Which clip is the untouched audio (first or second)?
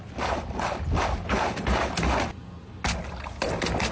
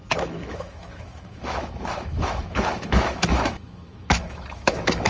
first